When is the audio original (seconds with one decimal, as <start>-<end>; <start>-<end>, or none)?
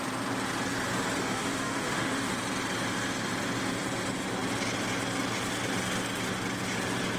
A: 0.0-1.2; 2.3-7.2